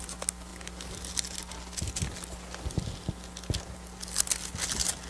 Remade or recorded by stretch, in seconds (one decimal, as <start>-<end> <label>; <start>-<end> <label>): 0.0-5.1 recorded